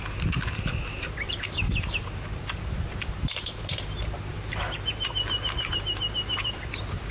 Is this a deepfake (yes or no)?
yes